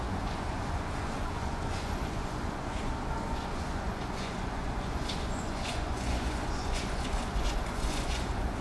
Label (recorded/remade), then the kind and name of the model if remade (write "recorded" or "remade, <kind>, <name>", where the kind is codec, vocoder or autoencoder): remade, vocoder, Vocos